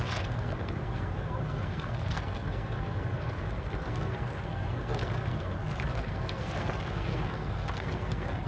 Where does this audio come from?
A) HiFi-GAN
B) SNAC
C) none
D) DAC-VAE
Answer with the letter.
B